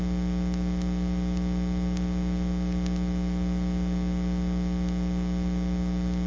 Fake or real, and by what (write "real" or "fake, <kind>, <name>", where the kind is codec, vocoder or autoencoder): real